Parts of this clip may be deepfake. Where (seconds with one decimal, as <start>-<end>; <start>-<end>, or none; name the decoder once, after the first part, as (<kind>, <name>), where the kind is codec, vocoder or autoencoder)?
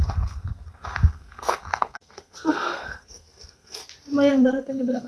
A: 0.0-3.8 (codec, SNAC); 4.3-5.1